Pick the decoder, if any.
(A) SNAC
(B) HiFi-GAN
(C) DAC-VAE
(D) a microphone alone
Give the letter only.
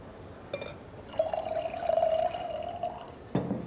D